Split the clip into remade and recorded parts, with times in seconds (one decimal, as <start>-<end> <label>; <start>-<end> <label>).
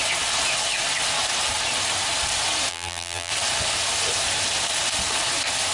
0.0-2.7 recorded; 2.7-3.3 remade; 3.3-5.7 recorded